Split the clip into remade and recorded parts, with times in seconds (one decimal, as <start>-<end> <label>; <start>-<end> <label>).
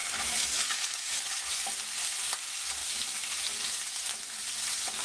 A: 0.0-1.7 remade; 1.7-2.8 recorded; 2.8-4.4 remade; 4.4-5.0 recorded